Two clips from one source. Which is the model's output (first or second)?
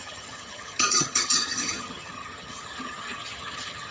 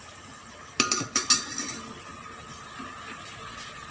first